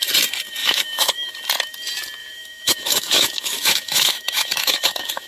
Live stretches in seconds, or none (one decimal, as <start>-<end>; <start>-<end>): 0.0-0.6; 1.3-2.2